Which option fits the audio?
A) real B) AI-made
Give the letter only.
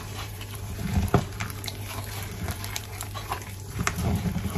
B